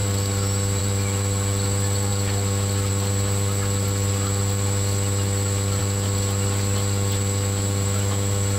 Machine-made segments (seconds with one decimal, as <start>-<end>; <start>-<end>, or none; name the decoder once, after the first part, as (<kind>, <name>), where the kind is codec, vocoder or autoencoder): none